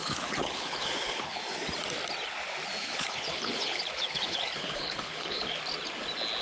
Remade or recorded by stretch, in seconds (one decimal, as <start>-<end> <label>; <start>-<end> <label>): 0.0-1.4 remade; 1.4-2.8 recorded; 2.8-5.6 remade; 5.6-6.4 recorded